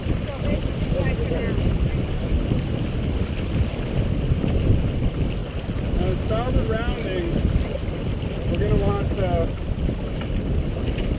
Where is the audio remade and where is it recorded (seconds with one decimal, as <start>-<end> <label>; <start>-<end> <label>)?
0.0-11.2 recorded